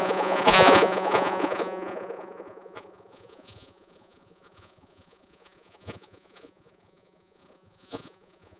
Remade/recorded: remade